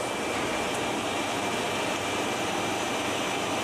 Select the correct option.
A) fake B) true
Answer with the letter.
B